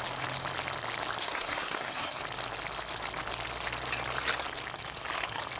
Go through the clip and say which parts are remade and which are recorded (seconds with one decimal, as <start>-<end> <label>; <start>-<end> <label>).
0.0-1.2 recorded; 1.2-2.2 remade; 2.2-5.6 recorded